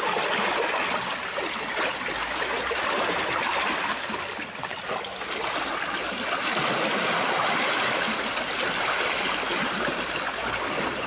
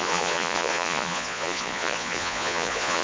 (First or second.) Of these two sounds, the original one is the first